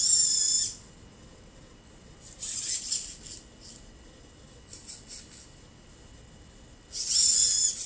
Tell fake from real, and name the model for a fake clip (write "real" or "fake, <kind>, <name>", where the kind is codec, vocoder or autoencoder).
real